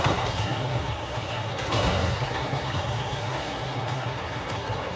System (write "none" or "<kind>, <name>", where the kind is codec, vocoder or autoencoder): codec, SNAC